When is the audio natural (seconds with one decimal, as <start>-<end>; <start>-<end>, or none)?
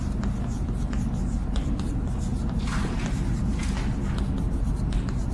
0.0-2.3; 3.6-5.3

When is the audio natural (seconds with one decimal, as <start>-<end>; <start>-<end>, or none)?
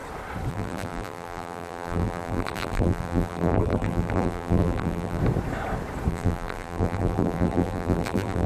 0.0-0.5; 5.2-6.1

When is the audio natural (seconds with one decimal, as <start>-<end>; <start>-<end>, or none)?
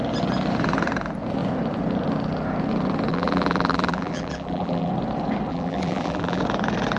0.0-3.1; 4.9-5.5; 6.4-7.0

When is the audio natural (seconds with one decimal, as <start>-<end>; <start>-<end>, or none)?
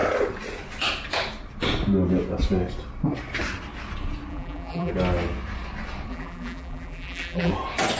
0.0-4.3; 4.9-6.1; 7.5-8.0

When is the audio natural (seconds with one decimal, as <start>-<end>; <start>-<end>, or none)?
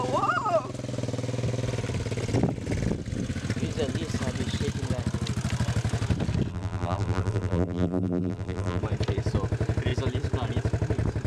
0.0-6.5; 8.8-11.3